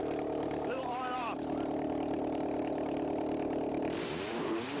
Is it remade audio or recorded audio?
remade